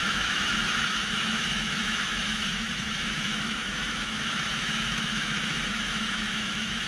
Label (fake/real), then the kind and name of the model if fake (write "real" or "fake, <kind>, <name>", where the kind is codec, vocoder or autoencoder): fake, autoencoder, DAC-VAE